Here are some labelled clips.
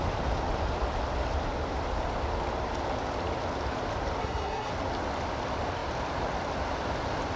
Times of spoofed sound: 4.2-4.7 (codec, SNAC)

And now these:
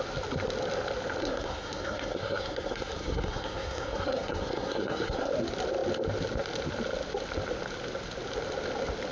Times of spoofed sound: 1.2-5.3 (codec, SNAC)

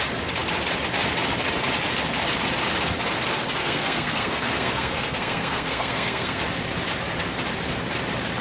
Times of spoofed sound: 3.6-6.4 (codec, SNAC)